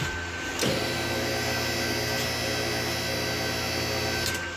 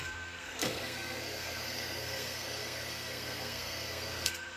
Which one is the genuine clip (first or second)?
first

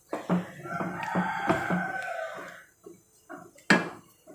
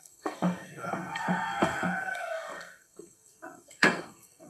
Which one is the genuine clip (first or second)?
first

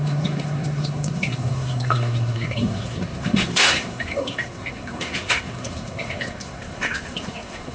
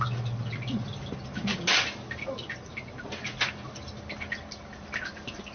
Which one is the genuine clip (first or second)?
second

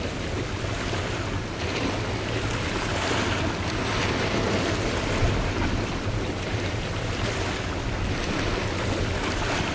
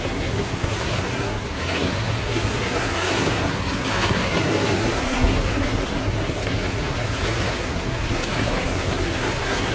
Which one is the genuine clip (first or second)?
first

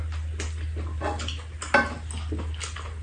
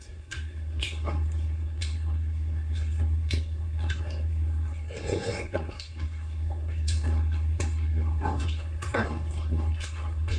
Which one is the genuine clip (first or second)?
first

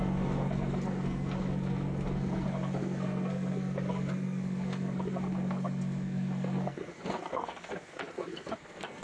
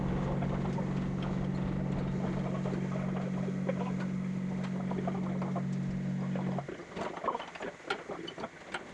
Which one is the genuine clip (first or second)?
second